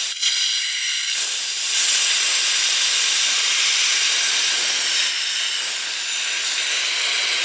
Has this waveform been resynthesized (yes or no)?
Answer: no